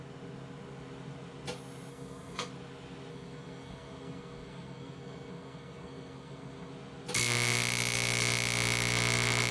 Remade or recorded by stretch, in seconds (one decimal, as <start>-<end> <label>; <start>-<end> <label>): 0.0-1.9 recorded; 1.9-2.5 remade; 2.5-3.1 recorded; 3.1-6.7 remade; 6.7-9.5 recorded